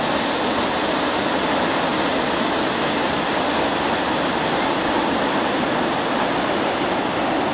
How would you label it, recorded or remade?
recorded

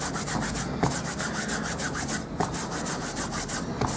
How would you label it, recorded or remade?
recorded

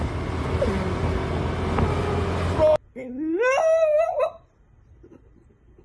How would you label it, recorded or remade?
recorded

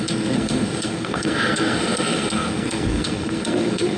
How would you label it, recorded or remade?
remade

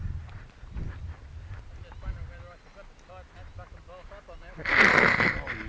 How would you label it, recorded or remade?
recorded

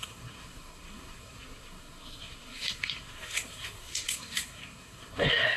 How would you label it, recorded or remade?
remade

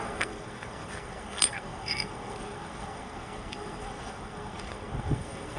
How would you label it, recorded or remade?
remade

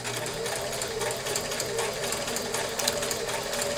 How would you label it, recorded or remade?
recorded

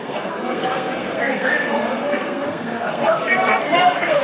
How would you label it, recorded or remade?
remade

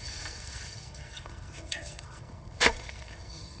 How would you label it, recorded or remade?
remade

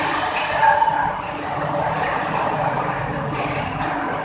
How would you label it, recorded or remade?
recorded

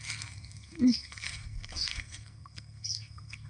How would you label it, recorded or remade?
remade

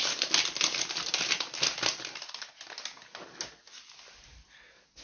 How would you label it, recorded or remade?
recorded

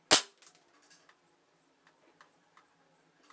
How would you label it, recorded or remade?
recorded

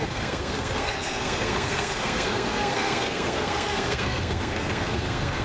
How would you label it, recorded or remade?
remade